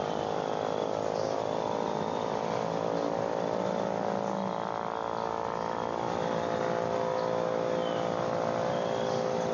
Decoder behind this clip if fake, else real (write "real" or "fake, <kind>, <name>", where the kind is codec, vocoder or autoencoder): real